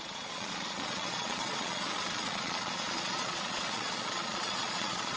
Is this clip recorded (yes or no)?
no